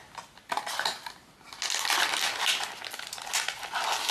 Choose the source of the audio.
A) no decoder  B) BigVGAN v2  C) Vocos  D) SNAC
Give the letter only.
A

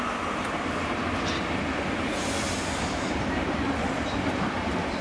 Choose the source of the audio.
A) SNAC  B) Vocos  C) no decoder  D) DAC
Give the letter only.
C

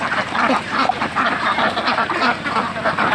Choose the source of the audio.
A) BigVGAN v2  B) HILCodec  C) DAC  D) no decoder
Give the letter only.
D